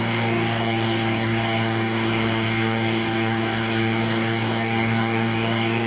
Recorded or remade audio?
remade